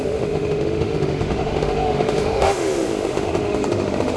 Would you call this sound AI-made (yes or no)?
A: yes